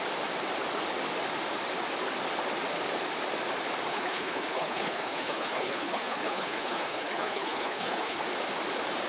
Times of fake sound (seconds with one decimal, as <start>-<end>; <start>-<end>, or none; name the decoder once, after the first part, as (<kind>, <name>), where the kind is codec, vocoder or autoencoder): 3.9-8.2 (codec, HILCodec)